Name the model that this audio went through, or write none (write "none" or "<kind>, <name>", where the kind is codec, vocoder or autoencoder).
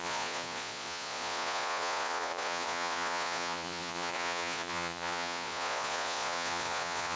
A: vocoder, Vocos